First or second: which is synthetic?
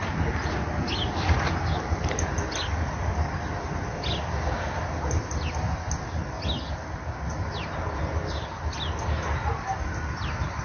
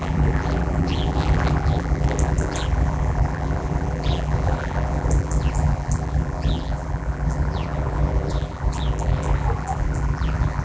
second